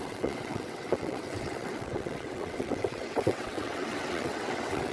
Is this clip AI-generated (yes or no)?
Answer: yes